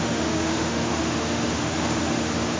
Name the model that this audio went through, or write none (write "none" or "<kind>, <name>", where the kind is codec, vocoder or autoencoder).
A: autoencoder, DAC-VAE